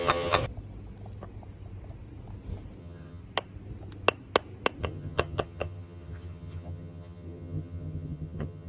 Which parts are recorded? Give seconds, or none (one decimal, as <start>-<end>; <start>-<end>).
0.4-2.8; 3.2-4.8